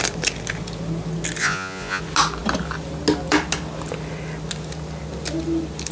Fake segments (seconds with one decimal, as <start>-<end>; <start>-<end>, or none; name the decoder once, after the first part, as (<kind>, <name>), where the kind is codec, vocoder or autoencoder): 1.4-2.0 (vocoder, Vocos)